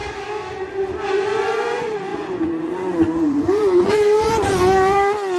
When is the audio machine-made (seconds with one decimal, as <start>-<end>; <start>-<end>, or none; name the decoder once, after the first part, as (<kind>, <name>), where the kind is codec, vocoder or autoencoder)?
1.1-5.4 (vocoder, Vocos)